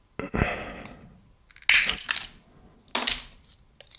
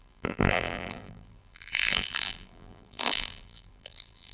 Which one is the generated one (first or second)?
second